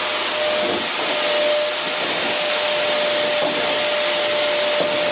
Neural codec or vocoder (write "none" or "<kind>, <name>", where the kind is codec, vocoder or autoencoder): none